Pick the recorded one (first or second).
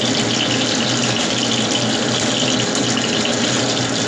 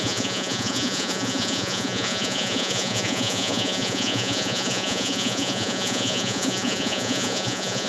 first